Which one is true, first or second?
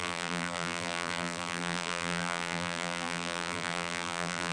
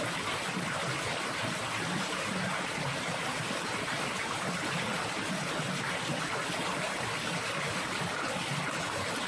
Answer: second